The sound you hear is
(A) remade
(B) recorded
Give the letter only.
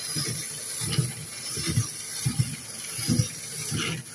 B